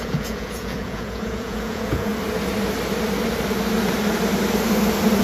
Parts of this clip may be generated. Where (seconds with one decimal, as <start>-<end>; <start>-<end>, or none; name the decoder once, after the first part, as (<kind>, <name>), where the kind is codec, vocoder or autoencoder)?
0.0-2.1 (vocoder, Vocos)

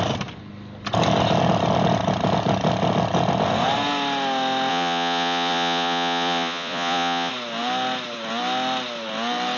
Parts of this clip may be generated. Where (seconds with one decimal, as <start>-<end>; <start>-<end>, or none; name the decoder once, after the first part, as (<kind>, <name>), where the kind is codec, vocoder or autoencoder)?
4.7-7.3 (vocoder, Vocos)

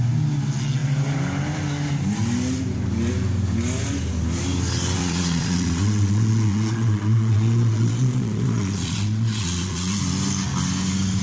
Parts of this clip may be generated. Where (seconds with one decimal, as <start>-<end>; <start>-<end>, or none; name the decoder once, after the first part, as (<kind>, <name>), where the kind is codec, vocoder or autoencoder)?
5.0-10.0 (vocoder, Vocos)

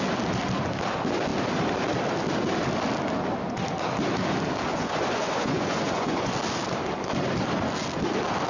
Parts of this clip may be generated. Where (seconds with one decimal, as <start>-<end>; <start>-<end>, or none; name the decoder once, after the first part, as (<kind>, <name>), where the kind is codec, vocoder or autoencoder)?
4.7-6.3 (vocoder, Vocos)